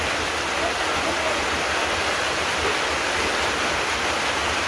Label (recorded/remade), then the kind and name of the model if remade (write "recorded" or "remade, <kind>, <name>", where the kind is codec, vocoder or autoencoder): recorded